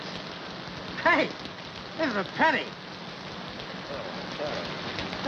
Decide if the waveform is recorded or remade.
recorded